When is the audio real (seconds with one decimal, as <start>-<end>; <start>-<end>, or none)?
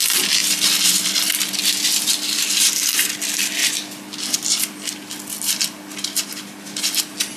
0.0-7.4